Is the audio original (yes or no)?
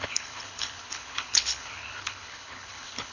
no